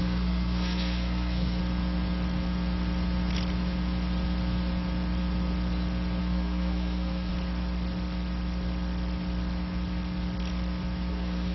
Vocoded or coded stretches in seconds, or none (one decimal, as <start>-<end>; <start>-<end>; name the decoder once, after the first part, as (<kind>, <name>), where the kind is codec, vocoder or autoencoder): 0.0-1.6 (codec, SNAC); 6.2-7.3; 11.1-11.5